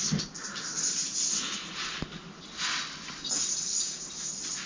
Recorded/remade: recorded